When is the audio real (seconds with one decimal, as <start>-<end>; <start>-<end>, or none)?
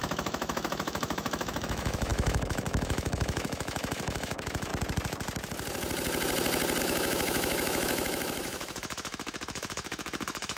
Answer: 4.7-6.8